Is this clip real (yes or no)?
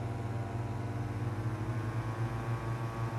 yes